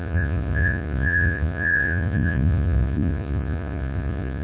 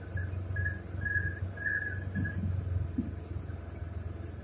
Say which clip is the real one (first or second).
second